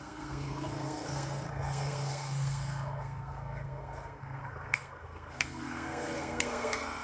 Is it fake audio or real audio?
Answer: fake